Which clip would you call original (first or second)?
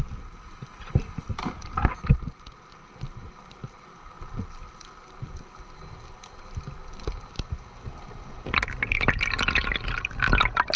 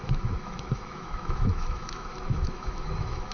first